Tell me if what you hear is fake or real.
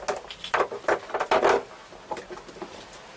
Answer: real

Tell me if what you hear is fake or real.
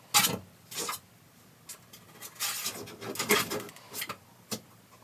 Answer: real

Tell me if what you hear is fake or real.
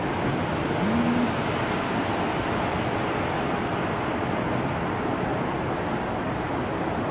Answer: real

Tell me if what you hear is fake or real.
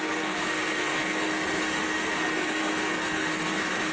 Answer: fake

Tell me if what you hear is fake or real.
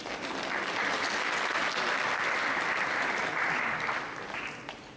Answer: real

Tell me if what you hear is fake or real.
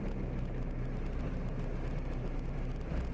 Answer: real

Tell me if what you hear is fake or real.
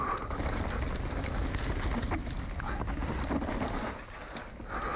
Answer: real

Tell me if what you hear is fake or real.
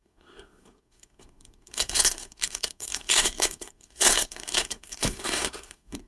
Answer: fake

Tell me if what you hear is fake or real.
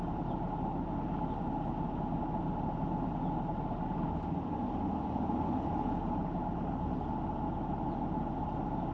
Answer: real